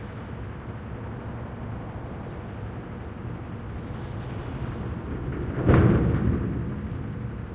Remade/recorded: recorded